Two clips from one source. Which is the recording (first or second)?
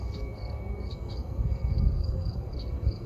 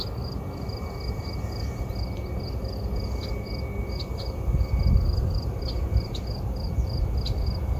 second